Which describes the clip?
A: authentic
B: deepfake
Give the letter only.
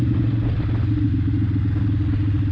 A